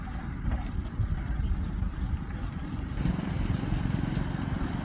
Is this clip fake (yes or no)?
no